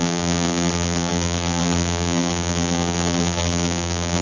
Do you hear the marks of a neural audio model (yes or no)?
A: yes